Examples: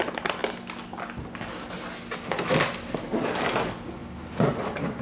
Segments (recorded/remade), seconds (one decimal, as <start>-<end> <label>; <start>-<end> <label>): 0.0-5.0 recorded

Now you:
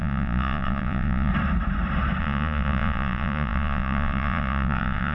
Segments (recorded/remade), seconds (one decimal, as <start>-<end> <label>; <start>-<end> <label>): 0.0-1.3 remade; 1.3-2.2 recorded; 2.2-5.1 remade

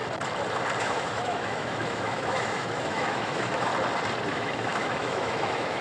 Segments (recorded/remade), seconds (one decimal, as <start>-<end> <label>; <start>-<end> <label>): 0.0-0.8 recorded; 0.8-3.7 remade; 3.7-4.3 recorded; 4.3-5.8 remade

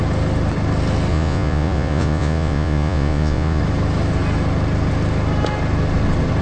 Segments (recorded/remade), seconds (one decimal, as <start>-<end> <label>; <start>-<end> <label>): 0.0-1.1 recorded; 1.1-3.6 remade; 3.6-6.4 recorded